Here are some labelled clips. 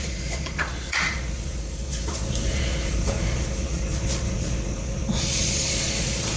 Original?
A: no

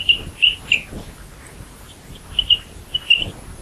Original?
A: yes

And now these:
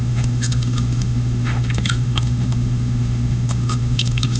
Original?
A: no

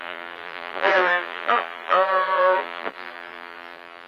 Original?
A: no